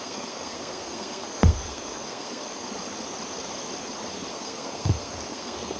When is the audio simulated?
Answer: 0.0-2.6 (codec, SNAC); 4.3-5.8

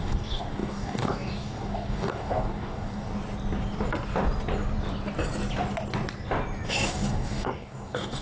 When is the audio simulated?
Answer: 0.0-3.1 (codec, DAC); 6.7-8.2

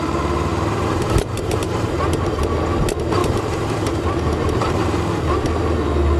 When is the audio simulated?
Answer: 0.5-2.4 (vocoder, BigVGAN v2); 3.2-5.1

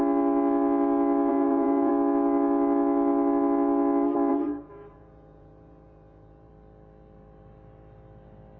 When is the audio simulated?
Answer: 1.3-1.9 (vocoder, Vocos); 4.3-6.5